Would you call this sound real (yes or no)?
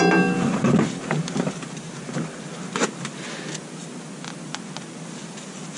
yes